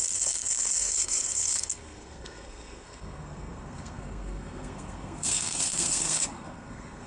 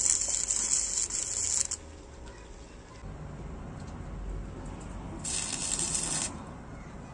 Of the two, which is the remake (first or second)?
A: first